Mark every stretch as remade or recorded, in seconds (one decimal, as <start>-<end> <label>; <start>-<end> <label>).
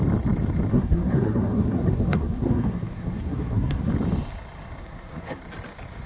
0.0-0.7 recorded; 0.7-3.9 remade; 3.9-4.8 recorded; 4.8-5.4 remade; 5.4-6.1 recorded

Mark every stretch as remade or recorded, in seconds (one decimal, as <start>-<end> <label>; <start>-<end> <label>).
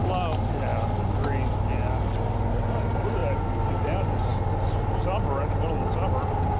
0.0-6.6 recorded